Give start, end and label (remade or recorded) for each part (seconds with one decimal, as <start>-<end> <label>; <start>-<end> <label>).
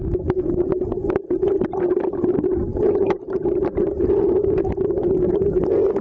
0.0-2.7 recorded; 2.7-3.7 remade; 3.7-6.0 recorded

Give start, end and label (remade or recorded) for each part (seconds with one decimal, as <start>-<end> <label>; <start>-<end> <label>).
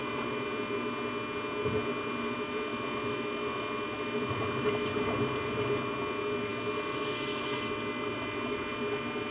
0.0-9.3 recorded